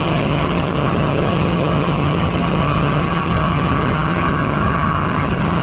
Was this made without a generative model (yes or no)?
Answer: no